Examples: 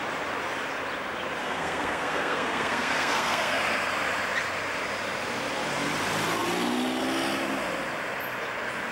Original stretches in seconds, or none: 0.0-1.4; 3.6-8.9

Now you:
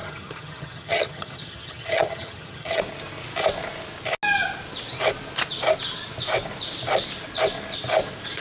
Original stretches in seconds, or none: 2.8-8.4

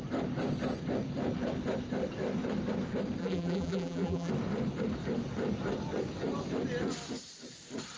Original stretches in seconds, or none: 0.0-3.2; 4.3-8.0

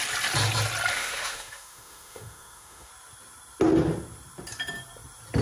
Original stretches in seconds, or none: 0.0-0.9; 2.9-5.4

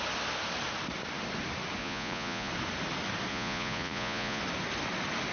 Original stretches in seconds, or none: 0.0-1.8; 2.5-3.3; 4.4-5.3

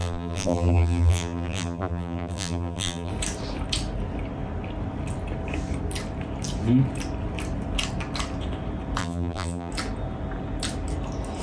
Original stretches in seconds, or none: 3.1-9.0; 9.7-11.4